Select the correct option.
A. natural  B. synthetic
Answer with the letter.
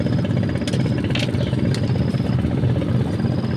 A